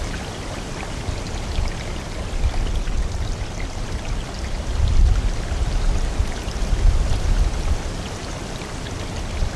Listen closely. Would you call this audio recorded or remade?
recorded